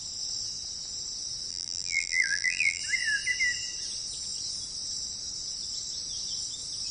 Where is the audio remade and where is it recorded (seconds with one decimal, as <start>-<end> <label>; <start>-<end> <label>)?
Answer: 0.0-1.5 recorded; 1.5-2.8 remade; 2.8-6.9 recorded